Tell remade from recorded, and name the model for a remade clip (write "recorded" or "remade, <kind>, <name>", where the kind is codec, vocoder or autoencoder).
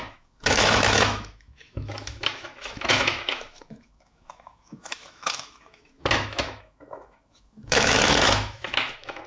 remade, autoencoder, DAC-VAE